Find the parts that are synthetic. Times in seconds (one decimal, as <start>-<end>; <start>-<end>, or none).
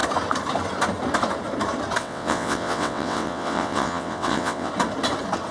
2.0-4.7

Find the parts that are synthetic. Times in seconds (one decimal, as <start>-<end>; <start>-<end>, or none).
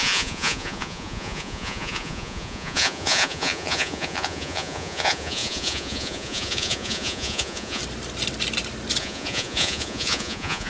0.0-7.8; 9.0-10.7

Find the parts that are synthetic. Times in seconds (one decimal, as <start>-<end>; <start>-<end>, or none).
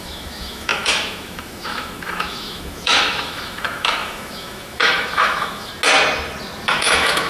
0.0-5.7; 6.7-7.3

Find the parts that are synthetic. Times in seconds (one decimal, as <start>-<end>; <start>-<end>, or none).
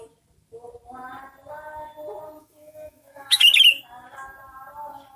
2.4-3.5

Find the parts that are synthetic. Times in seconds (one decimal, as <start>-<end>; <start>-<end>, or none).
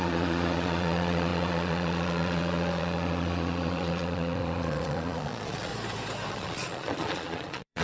0.0-5.7; 6.3-7.8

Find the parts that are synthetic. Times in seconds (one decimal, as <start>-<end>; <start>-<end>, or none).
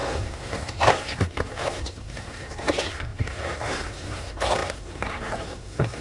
0.0-6.0